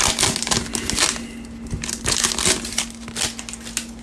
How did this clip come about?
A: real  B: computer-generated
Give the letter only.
A